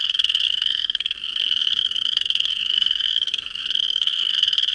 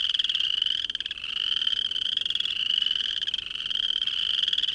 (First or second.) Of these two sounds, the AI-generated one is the first